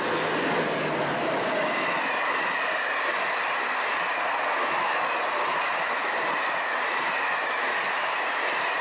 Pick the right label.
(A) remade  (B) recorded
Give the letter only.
B